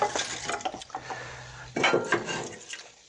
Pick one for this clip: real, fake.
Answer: real